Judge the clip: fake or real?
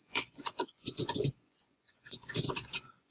fake